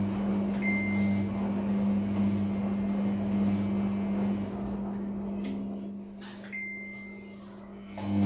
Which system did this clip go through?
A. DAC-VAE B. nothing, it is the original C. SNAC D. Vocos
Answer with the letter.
B